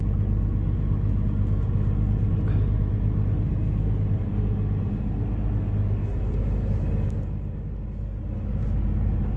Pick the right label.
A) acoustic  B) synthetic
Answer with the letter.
A